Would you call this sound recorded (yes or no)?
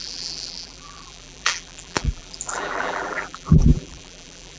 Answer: no